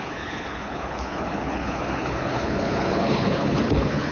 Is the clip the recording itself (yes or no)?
no